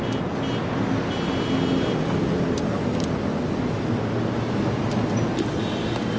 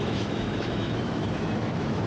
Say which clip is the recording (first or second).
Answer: first